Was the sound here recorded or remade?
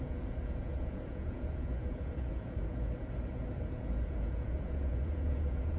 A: remade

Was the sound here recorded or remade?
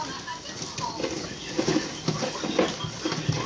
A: recorded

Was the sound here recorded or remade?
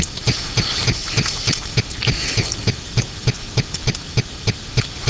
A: remade